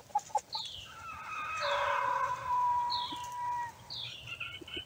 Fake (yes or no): no